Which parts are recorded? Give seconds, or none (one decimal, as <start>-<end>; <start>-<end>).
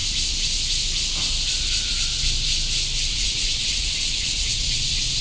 0.0-3.1